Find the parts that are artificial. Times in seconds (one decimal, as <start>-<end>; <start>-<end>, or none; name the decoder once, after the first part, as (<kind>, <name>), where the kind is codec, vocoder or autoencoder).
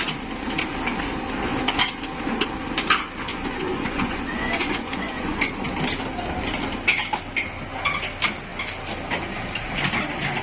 3.3-5.5 (vocoder, Vocos)